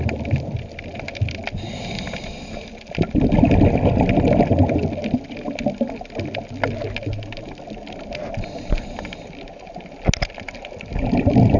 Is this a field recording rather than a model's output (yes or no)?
yes